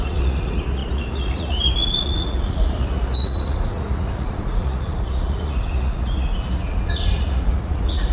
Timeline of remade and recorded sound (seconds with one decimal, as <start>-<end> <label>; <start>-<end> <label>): 0.0-8.1 remade